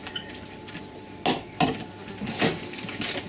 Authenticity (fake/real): real